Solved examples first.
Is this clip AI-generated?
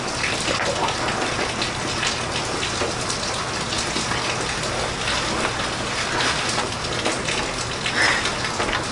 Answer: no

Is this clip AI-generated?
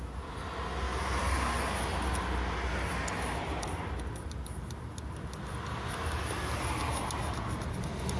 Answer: no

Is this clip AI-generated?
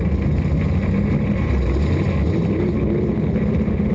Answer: no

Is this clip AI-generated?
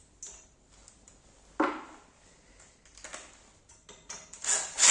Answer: no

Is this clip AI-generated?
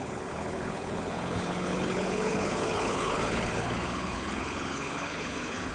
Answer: yes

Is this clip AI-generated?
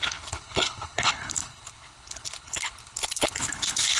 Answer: yes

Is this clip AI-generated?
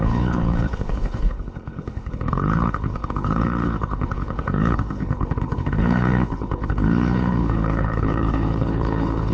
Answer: yes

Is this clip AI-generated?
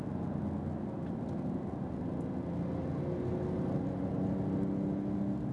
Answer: no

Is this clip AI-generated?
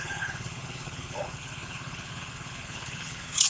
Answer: yes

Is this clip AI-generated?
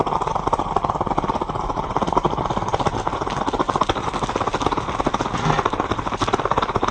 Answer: no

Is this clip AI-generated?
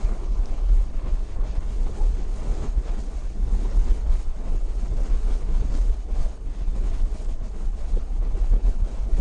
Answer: yes